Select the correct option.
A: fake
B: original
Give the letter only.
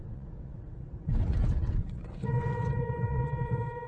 A